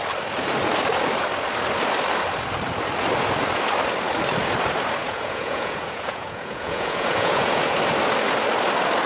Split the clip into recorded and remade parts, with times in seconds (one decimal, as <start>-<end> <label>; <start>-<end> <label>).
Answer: 0.0-5.0 recorded; 5.0-7.6 remade; 7.6-9.1 recorded